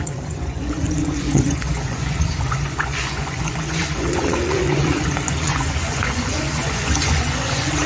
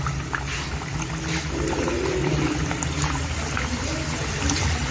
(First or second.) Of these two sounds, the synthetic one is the first